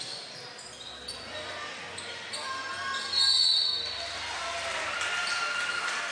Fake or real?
real